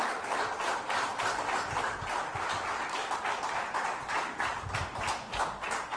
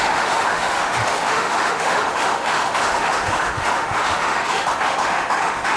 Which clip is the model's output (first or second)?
second